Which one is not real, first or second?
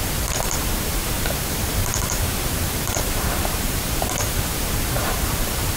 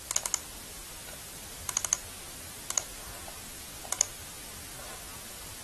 first